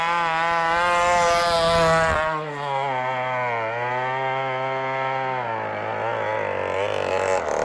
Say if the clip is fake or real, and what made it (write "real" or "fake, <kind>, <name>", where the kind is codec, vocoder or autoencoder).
real